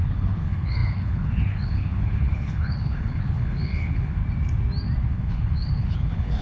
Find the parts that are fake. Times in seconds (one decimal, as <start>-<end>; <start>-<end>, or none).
0.0-4.2; 5.1-6.4